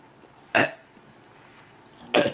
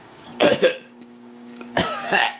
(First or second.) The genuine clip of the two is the first